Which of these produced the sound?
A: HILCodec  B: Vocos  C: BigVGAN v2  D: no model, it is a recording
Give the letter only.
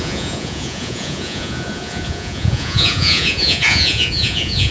B